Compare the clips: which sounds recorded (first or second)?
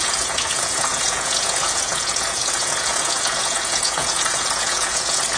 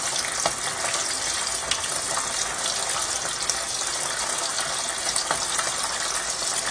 second